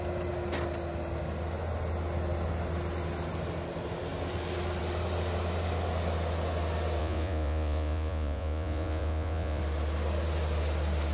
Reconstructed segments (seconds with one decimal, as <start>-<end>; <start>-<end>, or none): 7.0-9.6